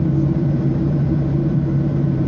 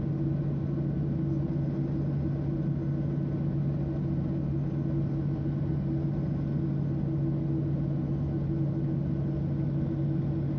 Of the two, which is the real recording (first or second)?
second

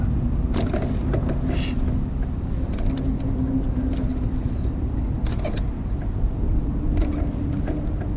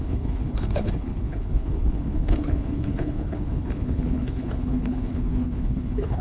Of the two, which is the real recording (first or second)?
first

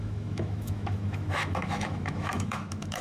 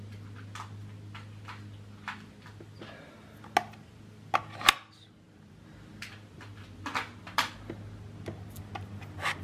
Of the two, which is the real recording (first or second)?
second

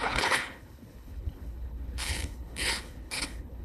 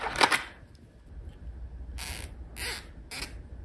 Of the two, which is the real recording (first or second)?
second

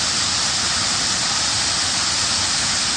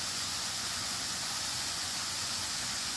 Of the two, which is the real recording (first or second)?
first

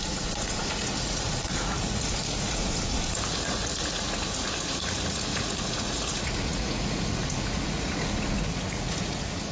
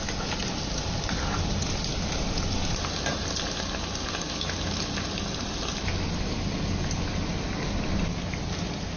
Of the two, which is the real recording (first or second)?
second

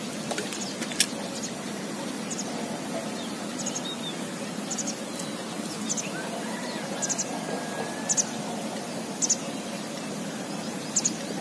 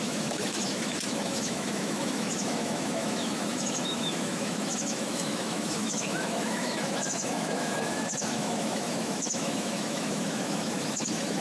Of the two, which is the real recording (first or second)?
first